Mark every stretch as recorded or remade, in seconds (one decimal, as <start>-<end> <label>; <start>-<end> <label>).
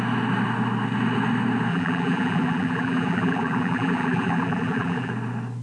0.0-1.7 recorded; 1.7-5.1 remade; 5.1-5.6 recorded